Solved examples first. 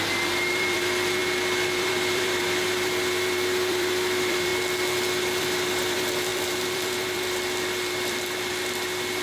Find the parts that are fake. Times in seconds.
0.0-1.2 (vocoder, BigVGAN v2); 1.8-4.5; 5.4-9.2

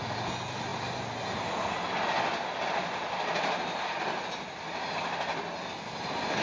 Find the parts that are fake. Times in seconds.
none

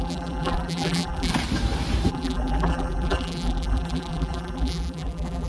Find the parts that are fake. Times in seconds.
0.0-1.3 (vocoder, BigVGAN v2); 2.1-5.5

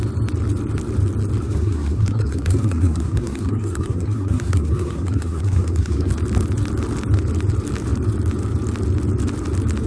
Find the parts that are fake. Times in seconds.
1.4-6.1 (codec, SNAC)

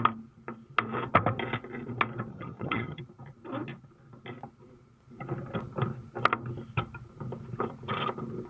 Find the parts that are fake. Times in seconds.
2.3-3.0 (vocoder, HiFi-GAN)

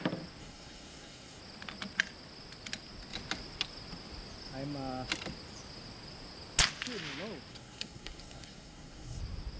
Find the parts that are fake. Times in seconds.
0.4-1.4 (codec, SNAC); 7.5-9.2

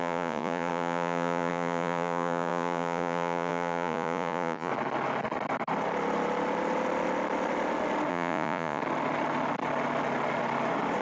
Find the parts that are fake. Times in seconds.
0.0-4.7 (vocoder, Vocos); 8.1-8.8